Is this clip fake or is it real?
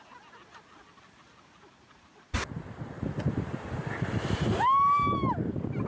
real